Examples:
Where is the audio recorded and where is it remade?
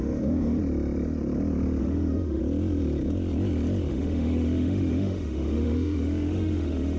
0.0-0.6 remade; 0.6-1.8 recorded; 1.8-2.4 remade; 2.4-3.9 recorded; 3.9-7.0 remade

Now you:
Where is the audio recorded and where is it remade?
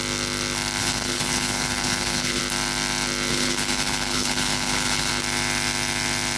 0.0-0.8 recorded; 0.8-2.4 remade; 2.4-3.3 recorded; 3.3-5.1 remade; 5.1-6.4 recorded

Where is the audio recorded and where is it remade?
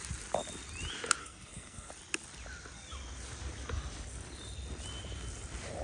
0.0-1.2 recorded; 1.2-1.9 remade; 1.9-5.8 recorded